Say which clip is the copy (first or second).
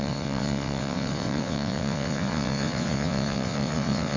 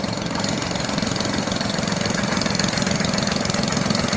first